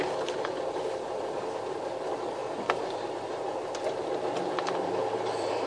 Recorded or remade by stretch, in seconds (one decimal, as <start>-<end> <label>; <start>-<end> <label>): 0.0-5.7 remade